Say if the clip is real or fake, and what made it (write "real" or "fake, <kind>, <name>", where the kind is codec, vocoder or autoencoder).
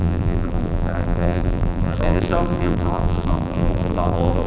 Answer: fake, vocoder, BigVGAN v2